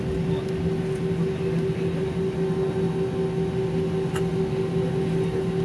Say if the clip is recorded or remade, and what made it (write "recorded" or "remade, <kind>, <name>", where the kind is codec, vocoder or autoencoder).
recorded